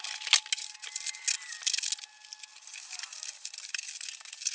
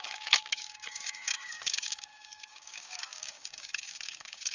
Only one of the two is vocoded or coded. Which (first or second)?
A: second